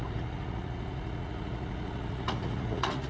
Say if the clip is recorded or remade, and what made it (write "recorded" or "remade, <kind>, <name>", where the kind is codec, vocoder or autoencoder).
remade, vocoder, Vocos